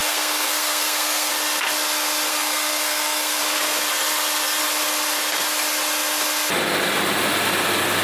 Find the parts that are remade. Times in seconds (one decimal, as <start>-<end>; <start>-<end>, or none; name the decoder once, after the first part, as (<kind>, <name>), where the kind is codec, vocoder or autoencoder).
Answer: 0.0-1.3 (codec, SNAC); 2.3-3.4